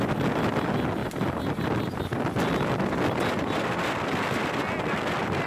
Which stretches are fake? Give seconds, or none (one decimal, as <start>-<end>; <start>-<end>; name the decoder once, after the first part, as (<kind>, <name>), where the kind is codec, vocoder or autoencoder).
none